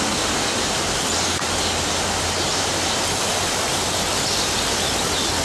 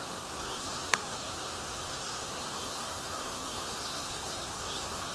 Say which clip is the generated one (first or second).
second